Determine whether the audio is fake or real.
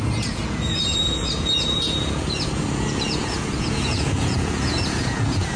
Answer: fake